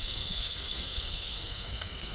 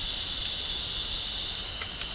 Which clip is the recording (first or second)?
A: second